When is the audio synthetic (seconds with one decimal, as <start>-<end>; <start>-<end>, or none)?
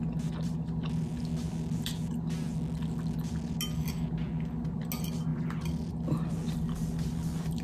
none